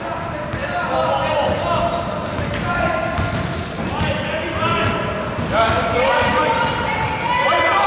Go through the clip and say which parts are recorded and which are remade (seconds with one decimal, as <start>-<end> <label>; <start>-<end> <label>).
0.0-7.9 recorded